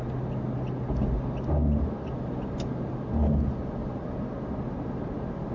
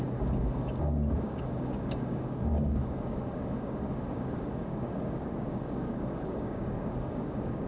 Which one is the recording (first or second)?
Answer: first